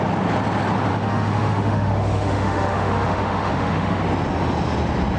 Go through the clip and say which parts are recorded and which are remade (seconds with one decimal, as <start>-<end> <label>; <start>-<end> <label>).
0.0-0.9 recorded; 0.9-4.0 remade; 4.0-5.2 recorded